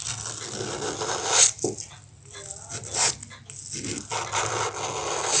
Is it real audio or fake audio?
real